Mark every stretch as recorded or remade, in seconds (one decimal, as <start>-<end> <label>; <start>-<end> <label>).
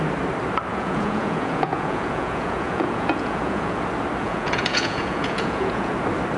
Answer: 0.0-0.7 recorded; 0.7-3.8 remade; 3.8-4.2 recorded; 4.2-5.9 remade; 5.9-6.4 recorded